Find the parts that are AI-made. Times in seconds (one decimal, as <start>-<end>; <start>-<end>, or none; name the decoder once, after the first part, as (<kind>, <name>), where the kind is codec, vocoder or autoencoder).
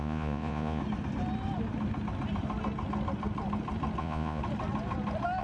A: 0.0-0.8 (vocoder, Vocos); 4.0-4.4